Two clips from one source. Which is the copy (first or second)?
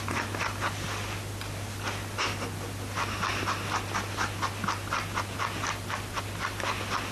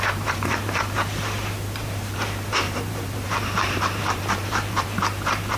second